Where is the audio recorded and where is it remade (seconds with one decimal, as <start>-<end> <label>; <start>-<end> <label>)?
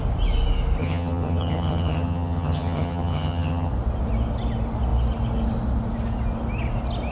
0.0-0.8 recorded; 0.8-3.7 remade; 3.7-7.1 recorded